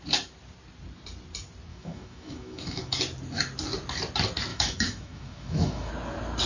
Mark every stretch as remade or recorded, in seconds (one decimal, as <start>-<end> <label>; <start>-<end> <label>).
0.0-1.7 recorded; 1.7-3.0 remade; 3.0-4.5 recorded; 4.5-5.9 remade; 5.9-6.5 recorded